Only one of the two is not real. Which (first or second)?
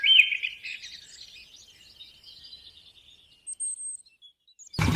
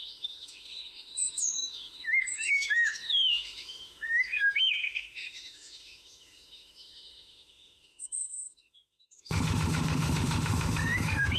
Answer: second